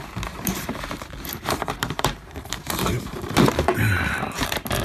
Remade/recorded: remade